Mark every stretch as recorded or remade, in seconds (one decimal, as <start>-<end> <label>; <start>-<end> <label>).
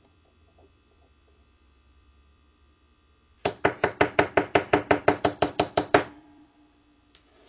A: 0.0-7.5 remade